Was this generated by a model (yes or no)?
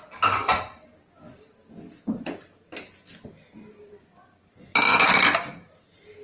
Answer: no